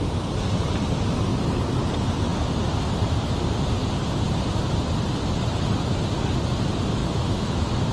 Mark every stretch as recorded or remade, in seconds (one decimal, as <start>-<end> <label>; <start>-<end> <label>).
0.0-7.0 recorded; 7.0-7.9 remade